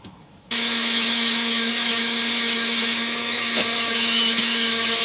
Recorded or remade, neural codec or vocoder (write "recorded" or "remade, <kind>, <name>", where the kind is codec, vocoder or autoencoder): remade, autoencoder, DAC-VAE